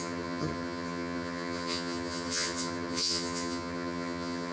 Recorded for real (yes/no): no